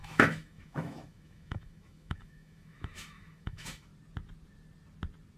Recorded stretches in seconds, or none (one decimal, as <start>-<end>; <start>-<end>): 3.9-5.4